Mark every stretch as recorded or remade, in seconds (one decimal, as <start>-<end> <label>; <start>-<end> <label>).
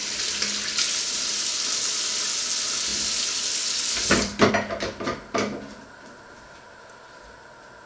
0.0-2.9 recorded; 2.9-4.5 remade; 4.5-7.9 recorded